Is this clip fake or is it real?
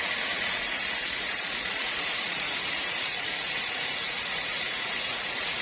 fake